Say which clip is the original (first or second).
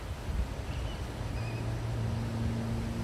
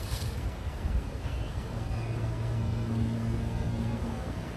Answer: first